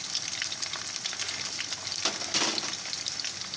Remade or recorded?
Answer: recorded